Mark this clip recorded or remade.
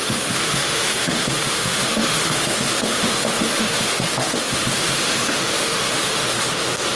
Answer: remade